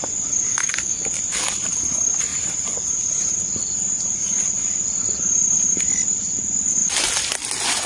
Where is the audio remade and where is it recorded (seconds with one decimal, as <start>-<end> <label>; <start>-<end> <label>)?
0.0-0.5 recorded; 0.5-1.0 remade; 1.0-7.9 recorded